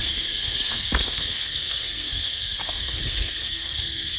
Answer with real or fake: fake